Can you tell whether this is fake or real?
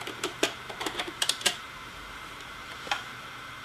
fake